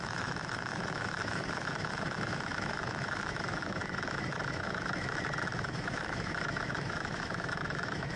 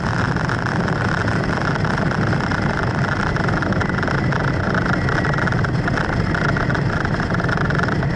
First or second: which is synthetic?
first